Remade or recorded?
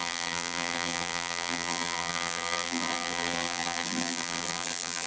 remade